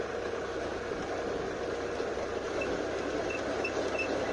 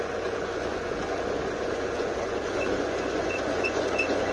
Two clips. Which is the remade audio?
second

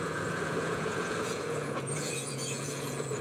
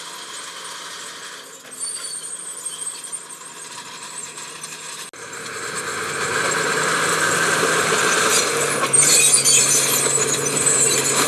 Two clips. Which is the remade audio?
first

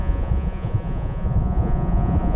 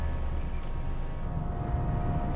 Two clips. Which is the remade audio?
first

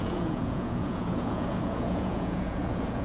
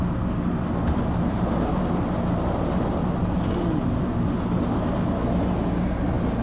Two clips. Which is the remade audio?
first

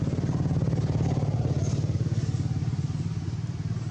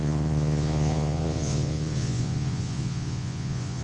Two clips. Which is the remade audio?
second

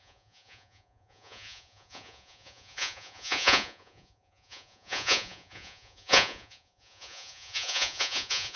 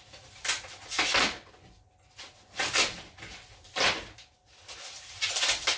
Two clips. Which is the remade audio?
first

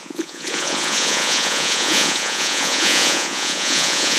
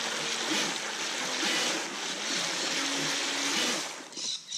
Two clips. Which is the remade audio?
first